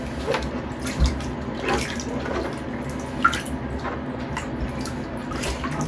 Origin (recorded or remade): recorded